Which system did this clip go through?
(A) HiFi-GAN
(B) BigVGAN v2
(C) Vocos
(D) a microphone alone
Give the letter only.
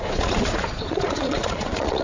C